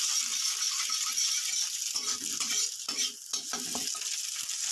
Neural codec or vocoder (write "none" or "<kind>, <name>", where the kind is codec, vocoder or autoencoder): none